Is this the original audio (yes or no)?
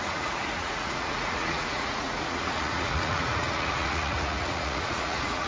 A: no